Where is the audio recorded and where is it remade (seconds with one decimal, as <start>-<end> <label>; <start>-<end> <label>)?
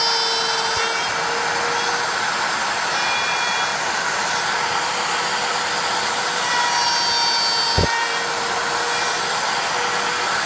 0.0-10.5 recorded